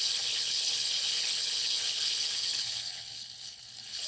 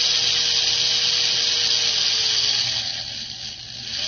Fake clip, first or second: first